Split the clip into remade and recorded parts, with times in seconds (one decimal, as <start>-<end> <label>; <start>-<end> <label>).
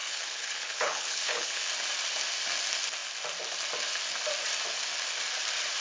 0.0-1.6 remade; 1.6-5.8 recorded